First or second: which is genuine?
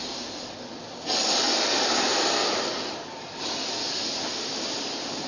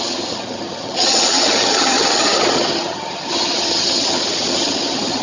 first